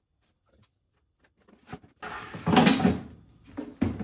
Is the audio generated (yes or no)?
no